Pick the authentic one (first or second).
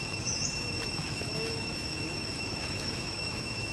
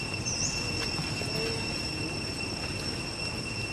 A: second